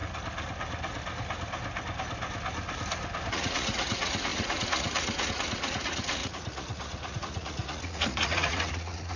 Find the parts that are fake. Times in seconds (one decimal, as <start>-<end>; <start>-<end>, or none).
3.3-9.2